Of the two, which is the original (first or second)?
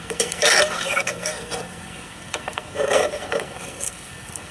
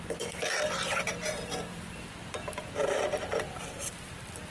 second